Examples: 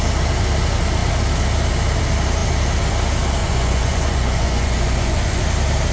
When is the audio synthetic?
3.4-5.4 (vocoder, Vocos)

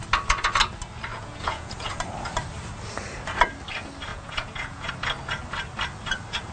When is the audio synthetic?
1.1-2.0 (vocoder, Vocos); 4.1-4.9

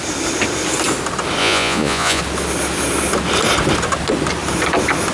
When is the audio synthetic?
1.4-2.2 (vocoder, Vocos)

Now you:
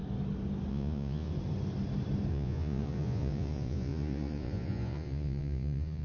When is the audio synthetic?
0.7-1.3 (vocoder, Vocos); 2.3-6.0

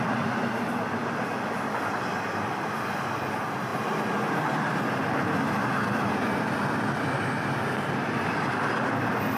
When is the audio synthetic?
none

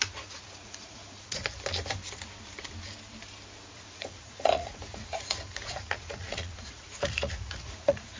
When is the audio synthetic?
0.0-1.4 (vocoder, Vocos); 3.7-8.2

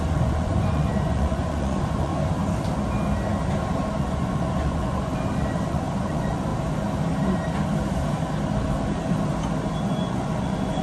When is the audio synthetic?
0.0-2.1 (vocoder, Vocos); 4.0-5.1; 5.7-6.5; 9.8-10.8

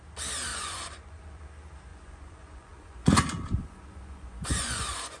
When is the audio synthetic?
0.5-1.4 (vocoder, Vocos); 1.9-5.2